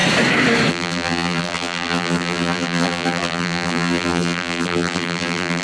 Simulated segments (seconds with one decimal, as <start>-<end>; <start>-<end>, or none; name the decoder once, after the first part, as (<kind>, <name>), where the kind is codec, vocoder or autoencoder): 0.7-5.6 (vocoder, BigVGAN v2)